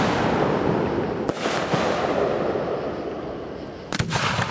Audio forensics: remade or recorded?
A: recorded